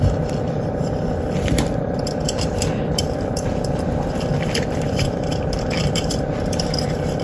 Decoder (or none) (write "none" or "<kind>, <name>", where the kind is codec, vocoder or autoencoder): vocoder, BigVGAN v2